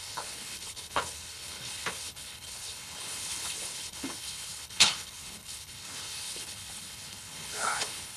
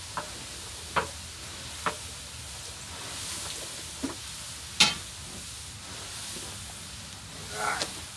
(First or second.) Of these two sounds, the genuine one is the second